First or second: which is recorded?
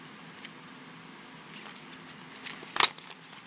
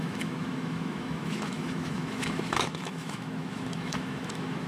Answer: first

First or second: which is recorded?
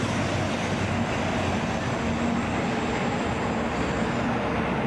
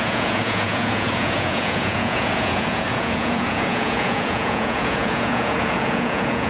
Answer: first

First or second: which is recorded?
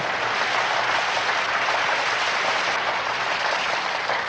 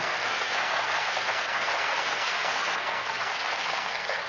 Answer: first